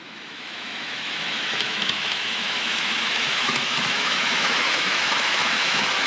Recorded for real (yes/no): no